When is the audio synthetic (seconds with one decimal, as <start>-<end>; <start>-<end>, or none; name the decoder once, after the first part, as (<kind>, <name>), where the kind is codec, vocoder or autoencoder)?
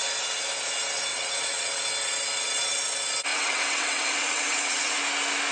1.1-1.8 (vocoder, WaveNeXt); 3.3-5.0